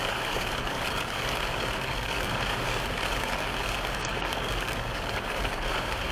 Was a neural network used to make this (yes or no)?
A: yes